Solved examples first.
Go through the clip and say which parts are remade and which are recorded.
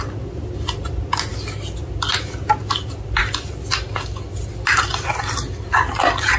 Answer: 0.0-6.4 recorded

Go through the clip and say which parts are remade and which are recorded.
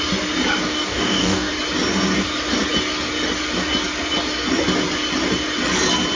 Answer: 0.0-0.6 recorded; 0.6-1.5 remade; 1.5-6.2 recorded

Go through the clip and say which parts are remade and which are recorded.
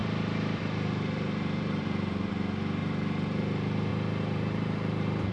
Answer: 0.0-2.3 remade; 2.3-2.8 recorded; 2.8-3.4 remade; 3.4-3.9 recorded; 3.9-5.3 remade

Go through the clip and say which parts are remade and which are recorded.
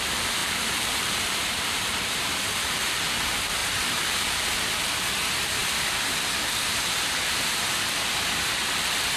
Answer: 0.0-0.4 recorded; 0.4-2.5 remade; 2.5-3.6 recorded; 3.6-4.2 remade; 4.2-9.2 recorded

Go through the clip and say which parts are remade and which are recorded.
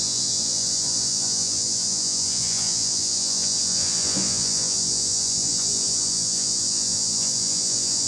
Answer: 0.0-8.1 remade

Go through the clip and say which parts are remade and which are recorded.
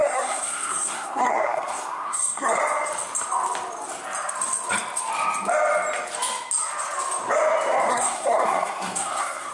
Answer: 0.0-2.6 remade; 2.6-7.9 recorded; 7.9-9.5 remade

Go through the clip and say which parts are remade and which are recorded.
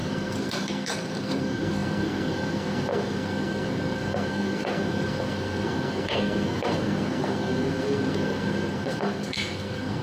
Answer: 0.0-10.0 remade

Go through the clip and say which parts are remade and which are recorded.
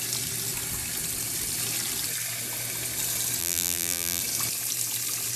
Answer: 0.0-3.4 recorded; 3.4-4.2 remade; 4.2-5.4 recorded